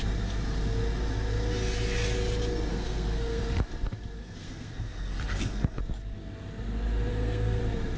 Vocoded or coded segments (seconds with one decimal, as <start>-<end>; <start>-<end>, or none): 2.7-3.4; 4.2-5.8; 7.1-7.6